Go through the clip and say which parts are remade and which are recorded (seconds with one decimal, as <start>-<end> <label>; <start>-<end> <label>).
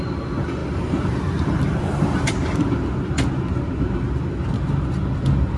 0.0-0.6 recorded; 0.6-3.8 remade; 3.8-5.6 recorded